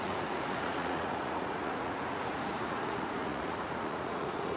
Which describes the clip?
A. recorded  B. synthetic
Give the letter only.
B